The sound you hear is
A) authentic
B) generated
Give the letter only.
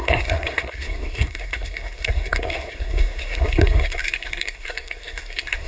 B